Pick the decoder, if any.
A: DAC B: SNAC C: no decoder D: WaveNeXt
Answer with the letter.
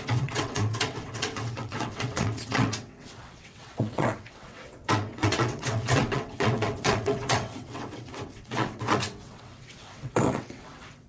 D